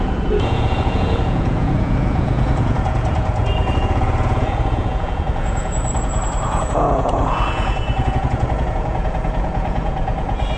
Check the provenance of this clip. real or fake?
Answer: fake